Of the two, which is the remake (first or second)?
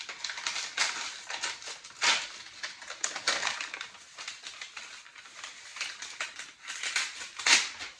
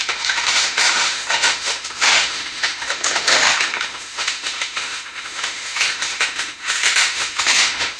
second